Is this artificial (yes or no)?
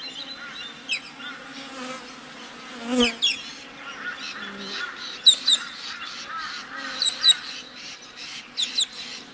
no